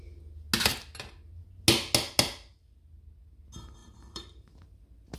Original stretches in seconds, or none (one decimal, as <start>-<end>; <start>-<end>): 0.0-3.8